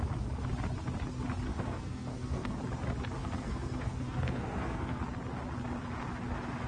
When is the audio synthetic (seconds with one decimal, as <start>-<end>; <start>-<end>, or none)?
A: 1.5-2.6; 3.2-5.0